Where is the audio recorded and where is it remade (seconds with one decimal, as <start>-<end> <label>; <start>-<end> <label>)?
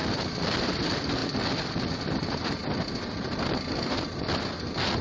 0.0-5.0 recorded